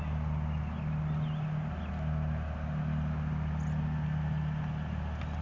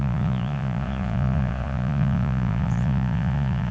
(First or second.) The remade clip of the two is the second